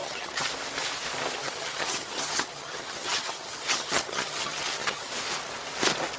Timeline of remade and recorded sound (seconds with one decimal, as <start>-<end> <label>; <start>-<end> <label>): 0.0-0.5 remade; 0.5-1.4 recorded; 1.4-5.1 remade; 5.1-6.2 recorded

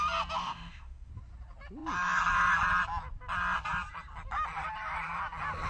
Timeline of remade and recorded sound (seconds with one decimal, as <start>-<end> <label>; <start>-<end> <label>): 0.0-0.4 recorded; 0.4-1.1 remade; 1.1-5.7 recorded

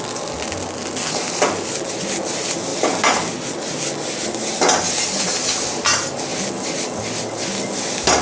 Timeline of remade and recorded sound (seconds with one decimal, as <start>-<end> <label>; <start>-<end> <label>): 0.0-8.2 recorded